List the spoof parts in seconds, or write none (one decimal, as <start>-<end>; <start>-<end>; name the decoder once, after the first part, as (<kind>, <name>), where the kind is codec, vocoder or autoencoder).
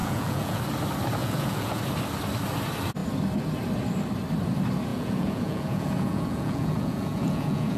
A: 0.0-0.6 (vocoder, Vocos); 1.2-1.8; 4.9-7.8